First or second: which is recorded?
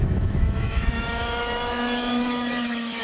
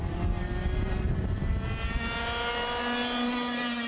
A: second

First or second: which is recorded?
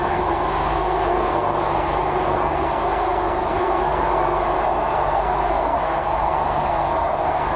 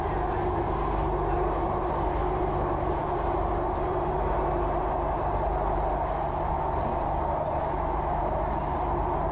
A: second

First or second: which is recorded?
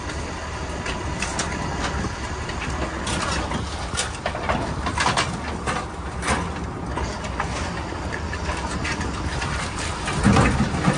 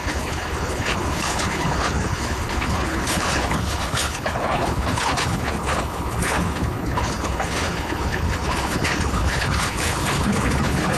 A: first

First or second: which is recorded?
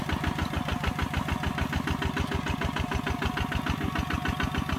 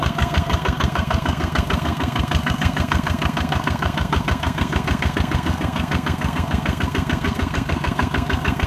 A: first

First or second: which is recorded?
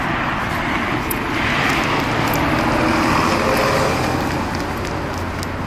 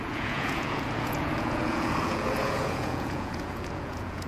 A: first